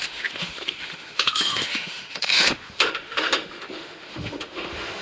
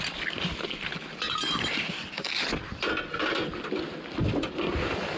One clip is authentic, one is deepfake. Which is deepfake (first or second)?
first